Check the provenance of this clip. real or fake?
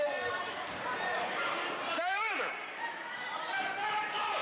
fake